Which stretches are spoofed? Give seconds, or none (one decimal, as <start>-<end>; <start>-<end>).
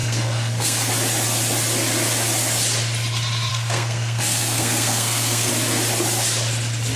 0.0-0.9; 3.5-5.5